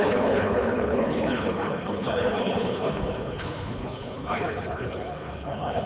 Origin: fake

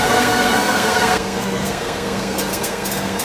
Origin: fake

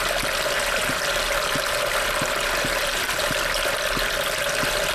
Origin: real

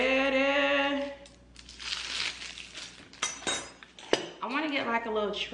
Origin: real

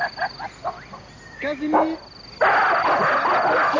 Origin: real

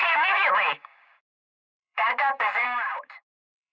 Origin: fake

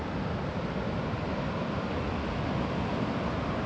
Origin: real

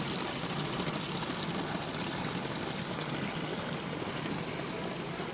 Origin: real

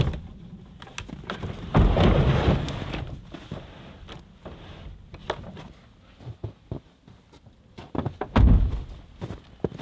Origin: real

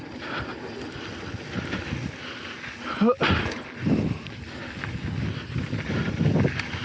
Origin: real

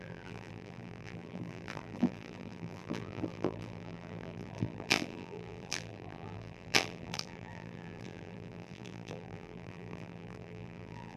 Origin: fake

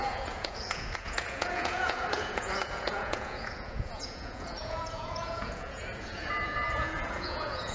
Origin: fake